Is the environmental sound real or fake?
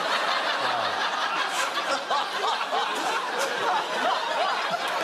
real